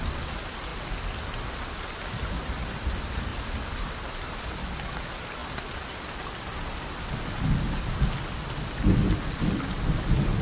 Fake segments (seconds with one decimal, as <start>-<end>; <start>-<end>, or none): 3.3-4.6